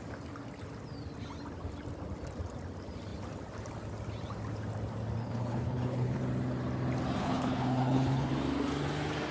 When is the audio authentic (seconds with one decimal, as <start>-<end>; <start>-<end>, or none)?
0.0-5.2; 6.2-7.2; 8.3-9.3